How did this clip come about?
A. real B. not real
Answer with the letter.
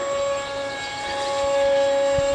A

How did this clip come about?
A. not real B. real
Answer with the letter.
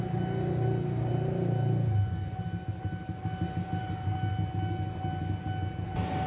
B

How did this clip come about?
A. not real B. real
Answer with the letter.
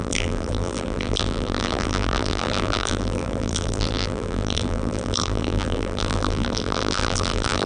A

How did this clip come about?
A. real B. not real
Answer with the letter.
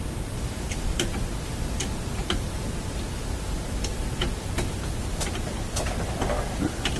A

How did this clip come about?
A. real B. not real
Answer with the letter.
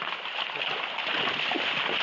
A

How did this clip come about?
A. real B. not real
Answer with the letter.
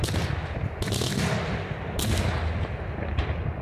A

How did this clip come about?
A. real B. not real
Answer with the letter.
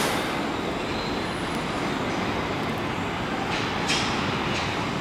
A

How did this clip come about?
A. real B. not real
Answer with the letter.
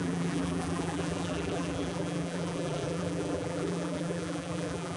B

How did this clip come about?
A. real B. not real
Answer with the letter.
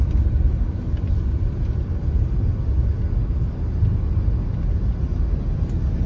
A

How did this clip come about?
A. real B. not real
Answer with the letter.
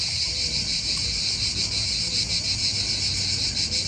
A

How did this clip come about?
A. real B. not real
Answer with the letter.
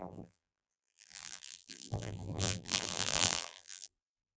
B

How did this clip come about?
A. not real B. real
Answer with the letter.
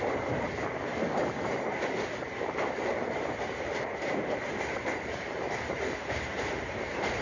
A